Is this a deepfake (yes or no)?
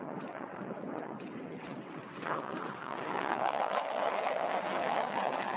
yes